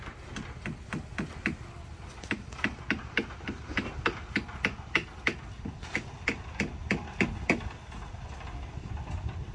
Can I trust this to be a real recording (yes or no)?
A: yes